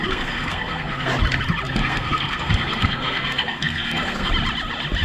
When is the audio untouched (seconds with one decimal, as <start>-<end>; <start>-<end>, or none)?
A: 1.1-1.8; 4.3-5.0